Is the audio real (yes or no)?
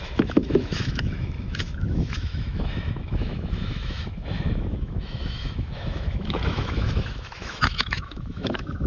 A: no